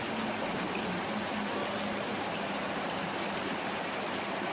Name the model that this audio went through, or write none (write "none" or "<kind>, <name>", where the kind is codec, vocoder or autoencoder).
none